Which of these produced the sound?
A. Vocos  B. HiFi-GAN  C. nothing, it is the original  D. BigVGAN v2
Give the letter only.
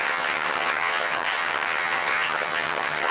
B